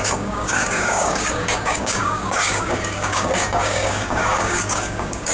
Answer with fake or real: fake